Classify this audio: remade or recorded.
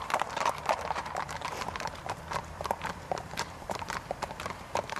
remade